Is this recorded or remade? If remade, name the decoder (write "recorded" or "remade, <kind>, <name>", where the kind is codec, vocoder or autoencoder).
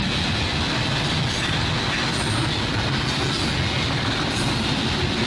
recorded